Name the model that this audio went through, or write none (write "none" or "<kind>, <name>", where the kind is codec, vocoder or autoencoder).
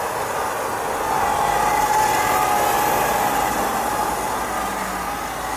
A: none